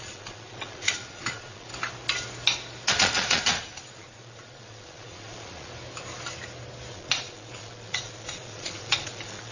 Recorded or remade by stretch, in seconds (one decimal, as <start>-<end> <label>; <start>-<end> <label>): 0.0-1.7 remade; 1.7-2.9 recorded; 2.9-5.7 remade; 5.7-6.9 recorded; 6.9-9.5 remade